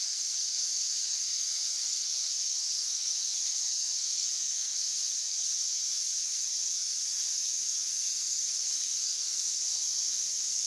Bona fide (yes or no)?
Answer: no